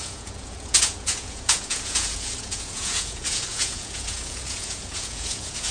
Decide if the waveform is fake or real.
fake